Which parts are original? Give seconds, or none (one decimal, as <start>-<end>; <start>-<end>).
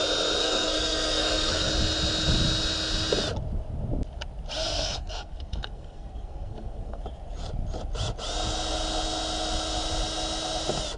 0.0-0.4; 1.7-4.6; 7.0-11.0